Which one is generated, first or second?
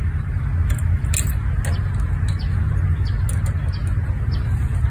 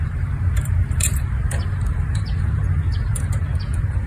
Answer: second